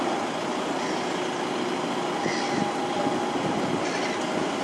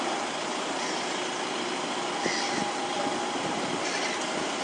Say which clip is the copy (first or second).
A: second